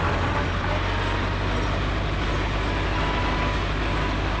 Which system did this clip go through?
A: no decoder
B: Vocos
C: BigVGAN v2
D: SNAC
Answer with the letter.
A